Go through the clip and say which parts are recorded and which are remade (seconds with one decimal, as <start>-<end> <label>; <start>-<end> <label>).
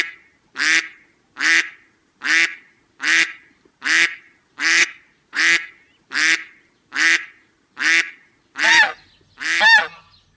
0.0-4.8 recorded; 4.8-5.4 remade; 5.4-10.4 recorded